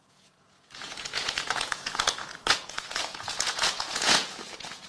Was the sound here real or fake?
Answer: fake